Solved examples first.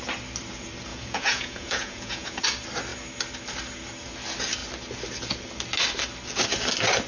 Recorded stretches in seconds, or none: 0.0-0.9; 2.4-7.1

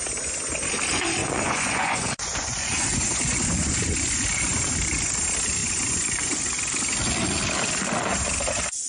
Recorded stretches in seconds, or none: 0.0-1.2; 4.7-5.6; 6.4-8.9

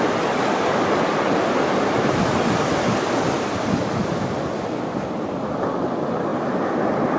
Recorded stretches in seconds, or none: 0.0-7.2

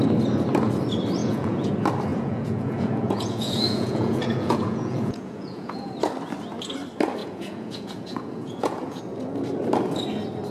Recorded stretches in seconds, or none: 0.0-1.2; 1.7-2.1; 5.9-7.2; 9.0-10.5

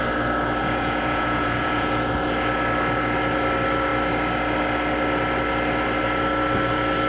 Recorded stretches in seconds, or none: 0.0-0.6; 2.1-7.1

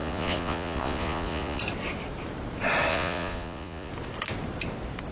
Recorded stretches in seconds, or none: 1.6-2.9; 3.9-5.1